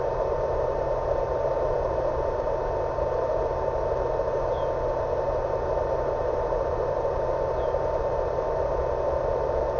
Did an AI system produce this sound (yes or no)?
yes